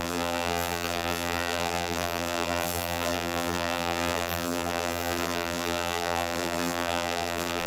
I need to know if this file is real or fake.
fake